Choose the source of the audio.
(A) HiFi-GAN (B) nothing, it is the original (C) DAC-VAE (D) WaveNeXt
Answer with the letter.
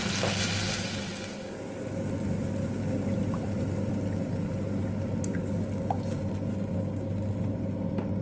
B